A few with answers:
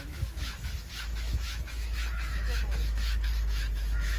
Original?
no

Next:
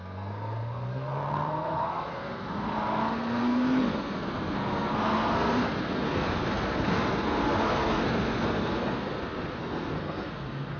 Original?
no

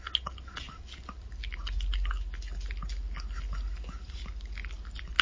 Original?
yes